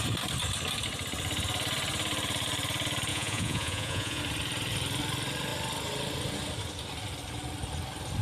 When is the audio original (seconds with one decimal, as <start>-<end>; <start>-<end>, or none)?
0.0-3.1; 4.2-8.2